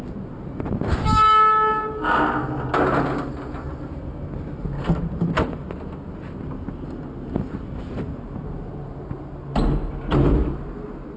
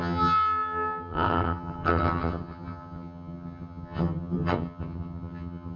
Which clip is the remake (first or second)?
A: second